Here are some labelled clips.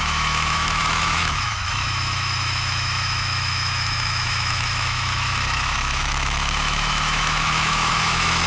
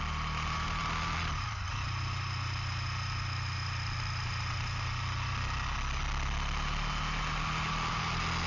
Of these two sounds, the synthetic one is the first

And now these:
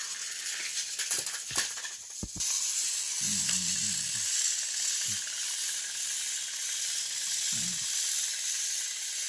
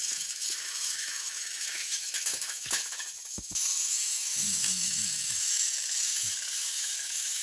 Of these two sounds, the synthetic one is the second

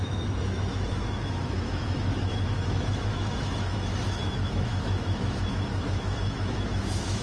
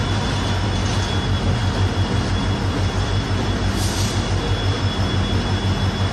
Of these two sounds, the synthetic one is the first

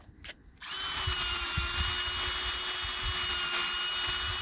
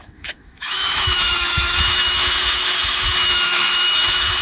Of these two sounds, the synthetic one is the second